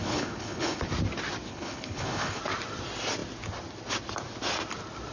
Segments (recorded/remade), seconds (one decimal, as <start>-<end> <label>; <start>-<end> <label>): 0.0-0.8 remade; 0.8-1.5 recorded; 1.5-2.4 remade; 2.4-5.1 recorded